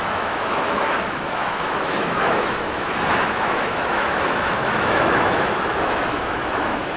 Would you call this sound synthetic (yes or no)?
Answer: yes